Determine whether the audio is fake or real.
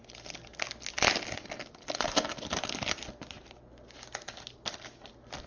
real